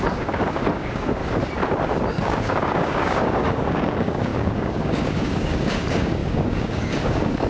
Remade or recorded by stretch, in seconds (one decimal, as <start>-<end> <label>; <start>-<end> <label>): 0.0-1.2 remade; 1.2-2.1 recorded; 2.1-7.5 remade